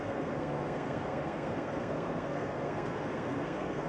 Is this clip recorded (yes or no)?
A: no